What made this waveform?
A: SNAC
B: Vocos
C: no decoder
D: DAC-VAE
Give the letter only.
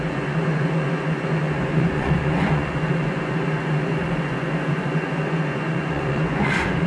B